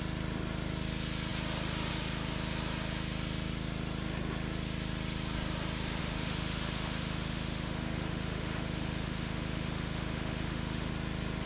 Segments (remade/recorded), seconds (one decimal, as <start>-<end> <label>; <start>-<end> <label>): 0.0-6.0 recorded; 6.0-10.9 remade; 10.9-11.5 recorded